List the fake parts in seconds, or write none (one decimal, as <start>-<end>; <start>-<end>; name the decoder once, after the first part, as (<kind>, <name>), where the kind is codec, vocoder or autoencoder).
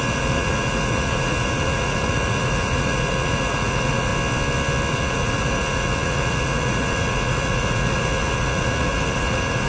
0.0-4.1 (vocoder, Vocos); 4.9-9.7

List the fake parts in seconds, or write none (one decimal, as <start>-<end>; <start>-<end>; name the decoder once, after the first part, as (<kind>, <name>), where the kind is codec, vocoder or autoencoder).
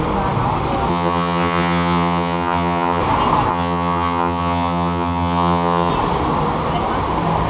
0.9-3.0 (vocoder, HiFi-GAN); 3.5-5.9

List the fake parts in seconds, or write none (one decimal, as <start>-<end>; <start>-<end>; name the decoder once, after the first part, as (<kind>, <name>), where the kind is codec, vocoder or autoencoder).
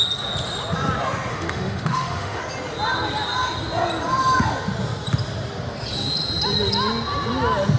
1.3-2.4 (autoencoder, DAC-VAE)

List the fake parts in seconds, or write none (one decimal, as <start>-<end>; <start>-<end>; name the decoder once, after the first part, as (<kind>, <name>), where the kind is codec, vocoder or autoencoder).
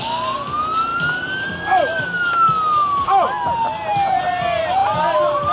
none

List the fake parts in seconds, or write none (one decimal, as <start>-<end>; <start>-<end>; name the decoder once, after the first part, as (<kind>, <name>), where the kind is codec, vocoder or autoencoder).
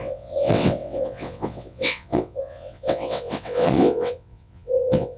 0.0-5.2 (vocoder, WaveNeXt)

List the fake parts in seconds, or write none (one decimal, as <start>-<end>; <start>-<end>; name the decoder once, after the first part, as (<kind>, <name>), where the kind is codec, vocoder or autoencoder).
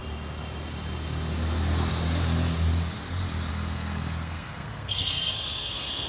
3.5-6.1 (codec, SNAC)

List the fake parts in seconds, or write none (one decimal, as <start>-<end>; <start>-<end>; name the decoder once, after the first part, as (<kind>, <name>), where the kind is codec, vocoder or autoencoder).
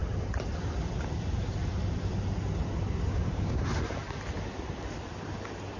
3.1-3.6 (codec, DAC)